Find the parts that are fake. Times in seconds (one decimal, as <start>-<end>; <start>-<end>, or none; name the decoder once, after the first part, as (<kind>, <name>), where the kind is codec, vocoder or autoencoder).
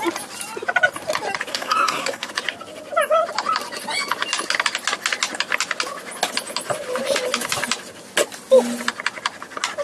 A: 1.5-2.3 (codec, SNAC)